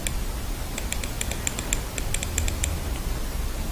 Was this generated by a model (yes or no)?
yes